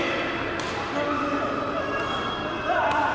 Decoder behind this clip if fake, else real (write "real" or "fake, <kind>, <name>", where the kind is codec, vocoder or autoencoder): real